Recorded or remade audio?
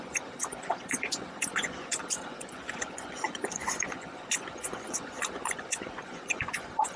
remade